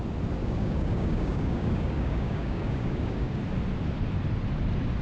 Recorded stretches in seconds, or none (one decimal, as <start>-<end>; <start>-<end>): 0.0-0.4; 3.4-5.0